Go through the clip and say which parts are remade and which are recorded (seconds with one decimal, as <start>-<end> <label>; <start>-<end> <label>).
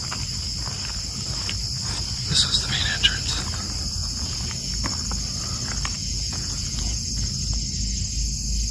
0.0-4.0 recorded; 4.0-4.7 remade; 4.7-6.0 recorded; 6.0-7.1 remade; 7.1-8.7 recorded